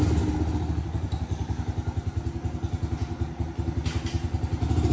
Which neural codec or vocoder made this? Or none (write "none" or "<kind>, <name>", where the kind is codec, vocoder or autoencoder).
none